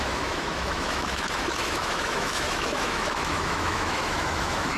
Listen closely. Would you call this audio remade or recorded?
remade